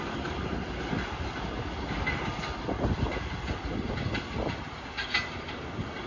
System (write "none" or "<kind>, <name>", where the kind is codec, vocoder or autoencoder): none